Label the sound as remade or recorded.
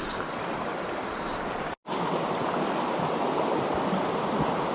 recorded